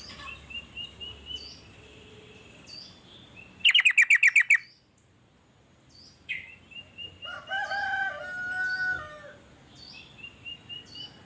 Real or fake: real